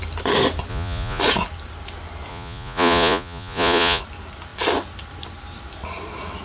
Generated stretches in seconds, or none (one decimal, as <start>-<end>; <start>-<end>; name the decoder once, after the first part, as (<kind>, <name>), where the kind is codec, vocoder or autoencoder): 0.7-1.2 (vocoder, Vocos); 2.3-4.0